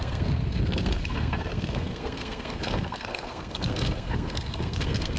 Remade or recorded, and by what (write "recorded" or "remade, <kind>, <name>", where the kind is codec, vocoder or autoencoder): remade, codec, SNAC